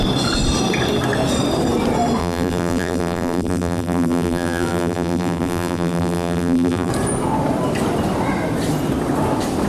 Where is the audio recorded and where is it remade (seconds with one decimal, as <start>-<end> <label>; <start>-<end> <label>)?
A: 0.0-2.2 recorded; 2.2-6.9 remade; 6.9-9.7 recorded